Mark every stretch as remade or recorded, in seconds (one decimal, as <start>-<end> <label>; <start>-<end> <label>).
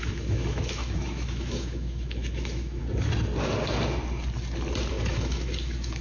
0.0-2.8 remade; 2.8-4.9 recorded; 4.9-6.0 remade